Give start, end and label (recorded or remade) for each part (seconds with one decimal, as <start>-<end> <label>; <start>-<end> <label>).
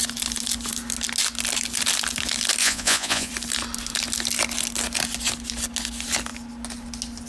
0.0-2.6 recorded; 2.6-3.3 remade; 3.3-7.3 recorded